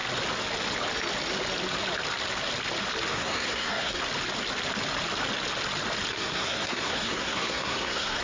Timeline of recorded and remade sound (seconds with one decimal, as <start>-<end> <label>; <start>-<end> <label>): 0.0-3.1 recorded; 3.1-4.0 remade; 4.0-6.1 recorded; 6.1-8.2 remade